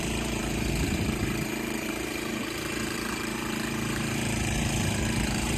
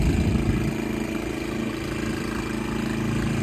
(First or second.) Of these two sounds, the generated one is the first